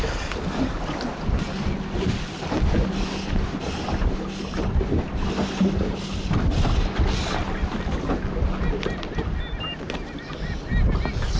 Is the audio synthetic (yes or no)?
no